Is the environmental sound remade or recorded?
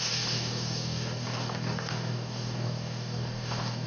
remade